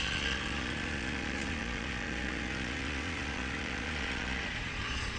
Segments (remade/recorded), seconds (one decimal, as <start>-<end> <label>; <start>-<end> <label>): 0.0-5.2 remade

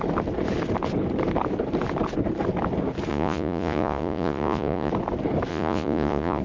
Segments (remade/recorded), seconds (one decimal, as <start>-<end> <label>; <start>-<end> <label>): 0.0-3.1 recorded; 3.1-4.9 remade; 4.9-5.5 recorded; 5.5-6.4 remade

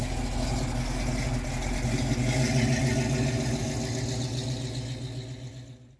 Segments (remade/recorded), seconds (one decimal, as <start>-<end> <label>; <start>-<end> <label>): 0.0-6.0 recorded

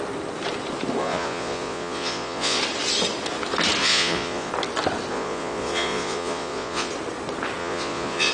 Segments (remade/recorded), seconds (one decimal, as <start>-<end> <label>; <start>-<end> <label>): 0.0-1.0 recorded; 1.0-2.6 remade; 2.6-3.8 recorded; 3.8-4.5 remade; 4.5-5.1 recorded; 5.1-6.9 remade; 6.9-7.6 recorded; 7.6-8.3 remade